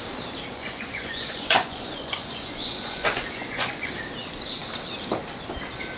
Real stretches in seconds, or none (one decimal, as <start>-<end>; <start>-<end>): 0.0-0.5; 3.9-6.0